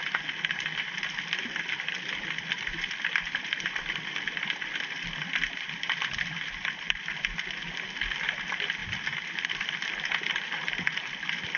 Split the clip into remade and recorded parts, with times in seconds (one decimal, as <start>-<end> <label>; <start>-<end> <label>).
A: 0.0-11.6 recorded